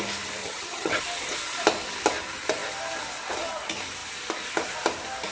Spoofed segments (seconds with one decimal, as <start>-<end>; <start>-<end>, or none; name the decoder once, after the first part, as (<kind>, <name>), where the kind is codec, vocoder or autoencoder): 0.4-1.0 (vocoder, HiFi-GAN)